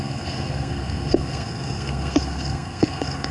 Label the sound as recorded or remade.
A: remade